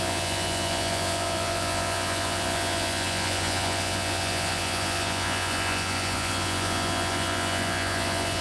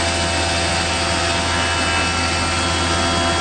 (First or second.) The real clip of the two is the second